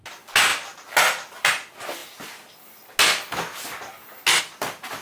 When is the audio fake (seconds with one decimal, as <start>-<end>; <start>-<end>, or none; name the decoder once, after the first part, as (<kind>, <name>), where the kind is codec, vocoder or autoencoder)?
none